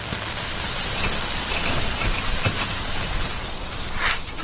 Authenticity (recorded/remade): recorded